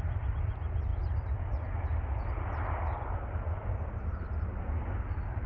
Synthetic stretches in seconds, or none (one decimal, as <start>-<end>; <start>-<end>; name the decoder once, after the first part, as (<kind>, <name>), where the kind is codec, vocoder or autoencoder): none